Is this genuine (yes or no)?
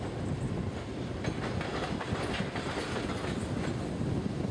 yes